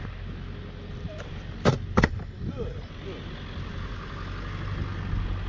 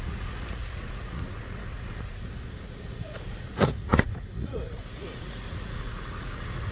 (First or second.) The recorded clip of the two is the first